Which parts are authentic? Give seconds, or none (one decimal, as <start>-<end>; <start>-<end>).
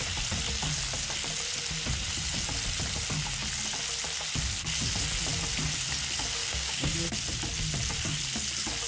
0.0-6.4; 6.9-8.9